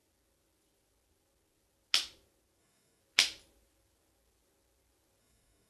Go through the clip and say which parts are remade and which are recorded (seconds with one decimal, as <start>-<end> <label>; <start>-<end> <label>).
0.0-2.6 recorded; 2.6-3.0 remade; 3.0-5.2 recorded; 5.2-5.7 remade